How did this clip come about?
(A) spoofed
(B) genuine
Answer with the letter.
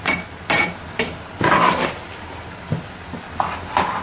B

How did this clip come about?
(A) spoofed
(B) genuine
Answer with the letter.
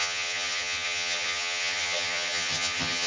A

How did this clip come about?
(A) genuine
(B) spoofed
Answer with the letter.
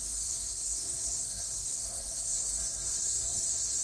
B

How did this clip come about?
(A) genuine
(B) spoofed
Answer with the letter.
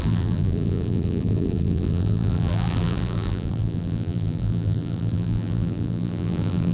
B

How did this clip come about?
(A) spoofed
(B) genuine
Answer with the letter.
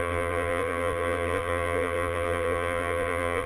A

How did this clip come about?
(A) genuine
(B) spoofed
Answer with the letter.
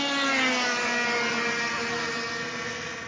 A